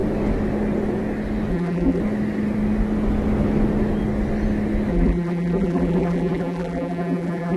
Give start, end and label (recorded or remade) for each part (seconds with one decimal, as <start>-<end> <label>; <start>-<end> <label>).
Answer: 0.0-1.5 recorded; 1.5-2.0 remade; 2.0-4.9 recorded; 4.9-7.6 remade